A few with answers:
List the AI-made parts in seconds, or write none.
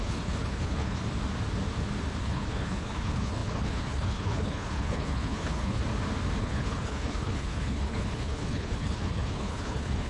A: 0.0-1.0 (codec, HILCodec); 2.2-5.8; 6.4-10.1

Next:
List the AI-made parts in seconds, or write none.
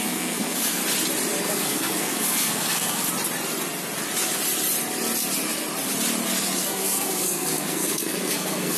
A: 0.0-0.8 (codec, SNAC); 1.4-3.0; 6.6-8.8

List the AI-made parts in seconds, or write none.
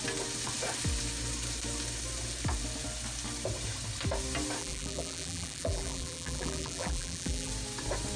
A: 4.6-7.5 (vocoder, BigVGAN v2)